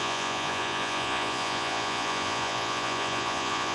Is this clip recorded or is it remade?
remade